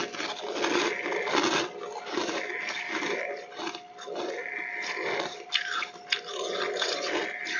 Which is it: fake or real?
real